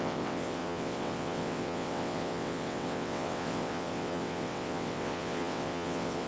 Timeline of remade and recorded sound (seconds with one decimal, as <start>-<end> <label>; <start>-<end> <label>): 0.0-6.3 remade